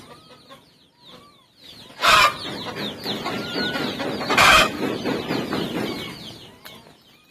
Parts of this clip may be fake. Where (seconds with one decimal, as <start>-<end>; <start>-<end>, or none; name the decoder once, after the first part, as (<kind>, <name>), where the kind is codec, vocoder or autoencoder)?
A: none